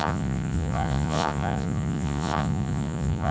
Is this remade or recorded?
remade